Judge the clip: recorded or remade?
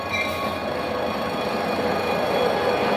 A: recorded